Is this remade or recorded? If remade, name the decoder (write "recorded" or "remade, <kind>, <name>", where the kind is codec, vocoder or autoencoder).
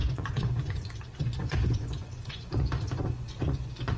remade, vocoder, Vocos